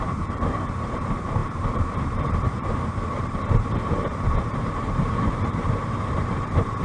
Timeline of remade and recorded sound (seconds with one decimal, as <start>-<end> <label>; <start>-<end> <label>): 0.0-6.8 remade